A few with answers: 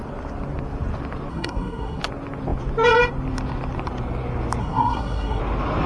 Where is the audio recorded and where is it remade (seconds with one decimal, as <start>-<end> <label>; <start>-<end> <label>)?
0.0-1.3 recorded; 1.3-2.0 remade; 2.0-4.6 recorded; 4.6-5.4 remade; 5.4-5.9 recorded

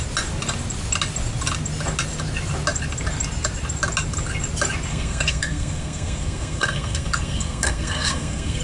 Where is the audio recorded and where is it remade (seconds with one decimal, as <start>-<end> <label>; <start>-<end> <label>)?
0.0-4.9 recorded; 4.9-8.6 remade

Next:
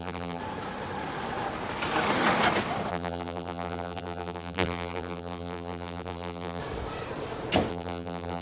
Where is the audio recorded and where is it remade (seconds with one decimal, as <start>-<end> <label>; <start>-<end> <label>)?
0.0-0.4 remade; 0.4-2.9 recorded; 2.9-6.6 remade; 6.6-7.7 recorded; 7.7-8.4 remade